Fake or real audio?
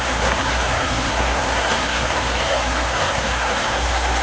fake